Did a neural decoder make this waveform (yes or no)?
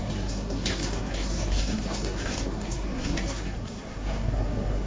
yes